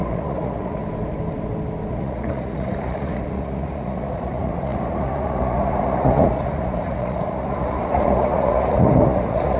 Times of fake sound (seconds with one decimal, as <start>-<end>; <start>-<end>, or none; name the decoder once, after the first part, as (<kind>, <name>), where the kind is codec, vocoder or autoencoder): 0.0-0.8 (vocoder, Vocos); 1.9-9.6